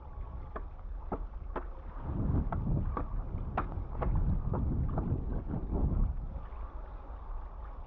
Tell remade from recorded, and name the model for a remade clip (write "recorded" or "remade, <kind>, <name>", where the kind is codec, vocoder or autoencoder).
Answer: recorded